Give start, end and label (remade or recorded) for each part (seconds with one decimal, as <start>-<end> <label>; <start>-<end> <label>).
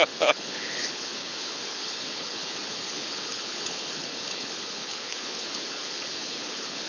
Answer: 0.0-6.9 remade